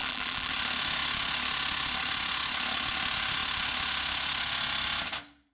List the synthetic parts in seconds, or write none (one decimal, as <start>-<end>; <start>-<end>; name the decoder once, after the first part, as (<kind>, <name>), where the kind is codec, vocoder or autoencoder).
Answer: 0.0-0.5 (vocoder, BigVGAN v2)